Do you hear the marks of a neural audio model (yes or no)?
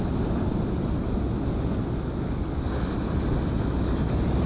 no